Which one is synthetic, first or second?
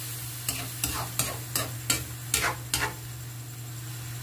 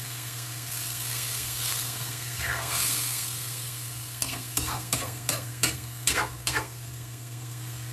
second